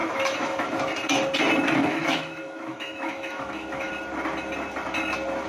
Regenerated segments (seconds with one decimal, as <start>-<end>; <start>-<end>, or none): 0.0-0.8; 1.8-3.9